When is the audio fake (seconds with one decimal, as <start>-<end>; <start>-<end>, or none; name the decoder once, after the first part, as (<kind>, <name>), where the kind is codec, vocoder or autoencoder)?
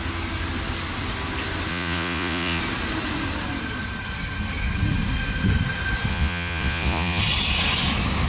1.7-2.6 (vocoder, Vocos); 6.1-7.2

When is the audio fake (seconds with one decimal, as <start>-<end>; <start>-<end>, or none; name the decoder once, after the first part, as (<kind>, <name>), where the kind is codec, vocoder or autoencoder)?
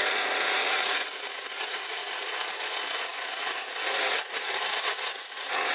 0.0-5.7 (vocoder, Vocos)